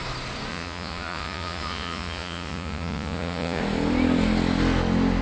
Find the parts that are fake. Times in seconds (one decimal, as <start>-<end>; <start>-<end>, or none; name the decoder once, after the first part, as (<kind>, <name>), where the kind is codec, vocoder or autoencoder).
0.5-3.6 (vocoder, Vocos)